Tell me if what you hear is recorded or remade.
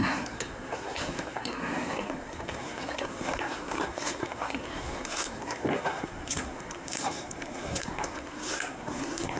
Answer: remade